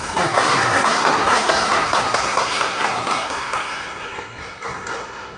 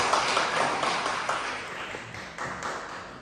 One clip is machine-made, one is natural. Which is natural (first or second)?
second